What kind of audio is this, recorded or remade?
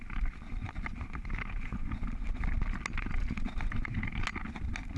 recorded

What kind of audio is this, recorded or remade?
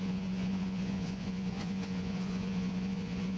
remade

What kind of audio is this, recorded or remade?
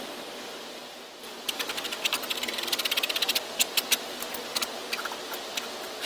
recorded